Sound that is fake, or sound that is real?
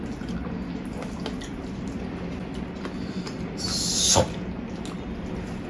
real